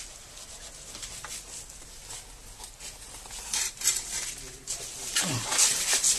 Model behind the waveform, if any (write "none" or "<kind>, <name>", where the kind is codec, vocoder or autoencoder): none